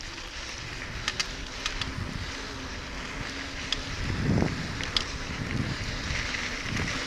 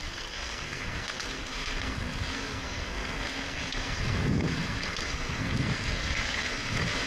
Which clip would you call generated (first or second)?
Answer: second